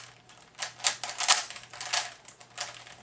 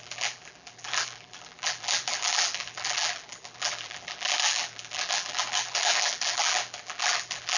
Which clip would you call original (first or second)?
first